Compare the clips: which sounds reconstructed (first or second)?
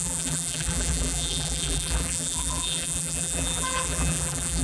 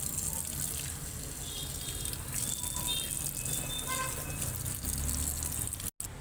first